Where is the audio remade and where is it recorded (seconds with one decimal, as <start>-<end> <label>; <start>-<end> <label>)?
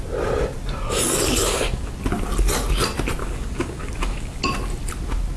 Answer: 0.0-1.4 recorded; 1.4-1.9 remade; 1.9-3.2 recorded; 3.2-4.4 remade; 4.4-5.4 recorded